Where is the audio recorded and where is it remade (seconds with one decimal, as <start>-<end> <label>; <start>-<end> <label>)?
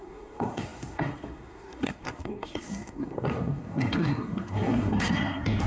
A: 0.0-5.7 remade